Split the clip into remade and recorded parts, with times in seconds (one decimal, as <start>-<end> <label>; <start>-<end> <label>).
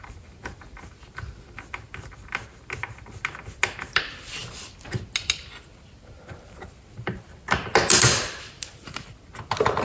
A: 0.0-9.8 recorded